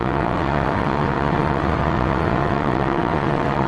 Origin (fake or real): fake